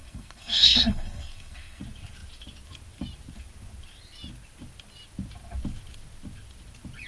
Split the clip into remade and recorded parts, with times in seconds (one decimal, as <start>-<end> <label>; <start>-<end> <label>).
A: 0.0-1.8 remade; 1.8-7.1 recorded